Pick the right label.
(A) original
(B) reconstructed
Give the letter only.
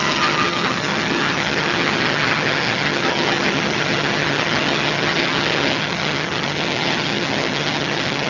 B